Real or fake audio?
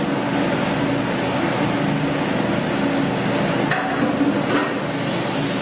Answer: real